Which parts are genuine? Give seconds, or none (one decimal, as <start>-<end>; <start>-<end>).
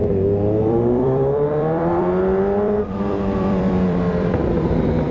0.0-0.6